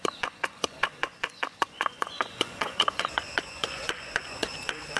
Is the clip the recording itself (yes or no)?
no